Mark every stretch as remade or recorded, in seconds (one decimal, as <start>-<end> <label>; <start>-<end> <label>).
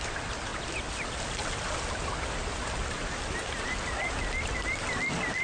0.0-5.4 recorded